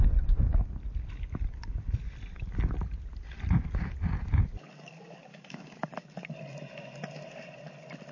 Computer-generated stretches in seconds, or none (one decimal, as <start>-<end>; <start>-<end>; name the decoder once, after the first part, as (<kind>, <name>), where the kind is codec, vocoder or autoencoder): 5.3-5.9 (autoencoder, DAC-VAE)